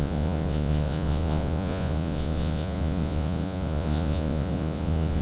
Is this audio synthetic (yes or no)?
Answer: yes